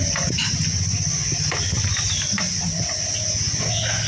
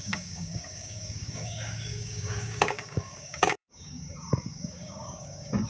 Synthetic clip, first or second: second